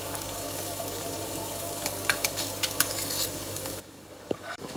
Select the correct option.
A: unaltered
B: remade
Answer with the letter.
B